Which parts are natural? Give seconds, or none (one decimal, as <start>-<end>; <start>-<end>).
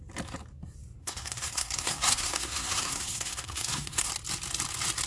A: 0.0-1.0; 4.1-5.1